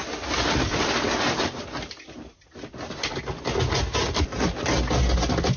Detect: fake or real real